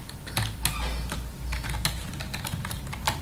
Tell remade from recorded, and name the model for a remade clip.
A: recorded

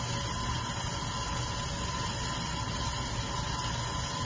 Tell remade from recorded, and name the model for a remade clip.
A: recorded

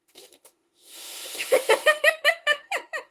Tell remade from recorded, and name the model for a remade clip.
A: remade, autoencoder, DAC-VAE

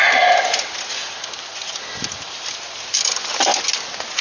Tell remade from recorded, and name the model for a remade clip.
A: recorded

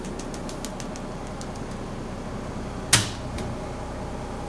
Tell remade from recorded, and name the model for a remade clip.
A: recorded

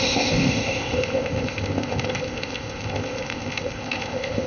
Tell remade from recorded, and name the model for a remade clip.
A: remade, codec, ZipCodec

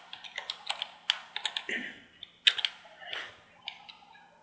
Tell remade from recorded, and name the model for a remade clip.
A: recorded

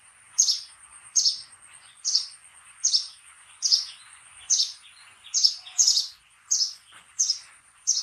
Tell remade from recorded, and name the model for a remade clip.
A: remade, vocoder, Vocos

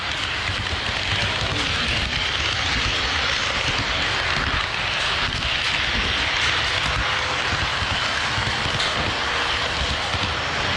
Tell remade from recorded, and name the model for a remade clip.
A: recorded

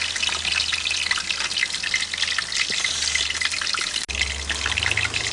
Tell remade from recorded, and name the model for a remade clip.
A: recorded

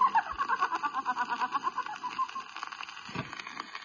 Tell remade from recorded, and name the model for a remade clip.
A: recorded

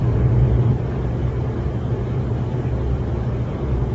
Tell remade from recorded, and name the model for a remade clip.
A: recorded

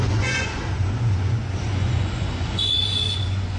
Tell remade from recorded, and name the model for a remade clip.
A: remade, vocoder, Vocos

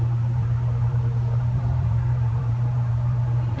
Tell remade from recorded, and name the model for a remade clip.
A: remade, vocoder, BigVGAN v2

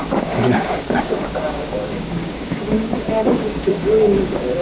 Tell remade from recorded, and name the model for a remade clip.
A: remade, codec, DAC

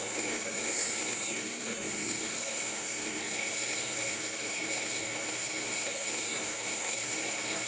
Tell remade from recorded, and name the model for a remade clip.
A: remade, codec, SNAC